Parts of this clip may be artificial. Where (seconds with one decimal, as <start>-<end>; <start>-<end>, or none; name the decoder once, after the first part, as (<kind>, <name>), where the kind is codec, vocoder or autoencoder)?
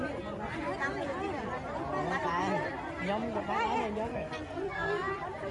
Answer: 4.1-5.1 (codec, SNAC)